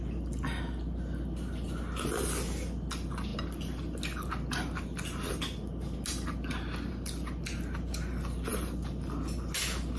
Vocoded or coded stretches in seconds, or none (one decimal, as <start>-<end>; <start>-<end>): none